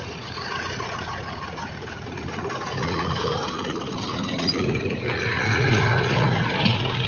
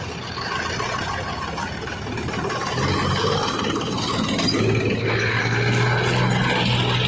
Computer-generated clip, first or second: first